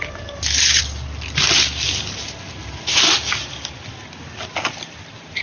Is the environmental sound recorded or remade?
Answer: recorded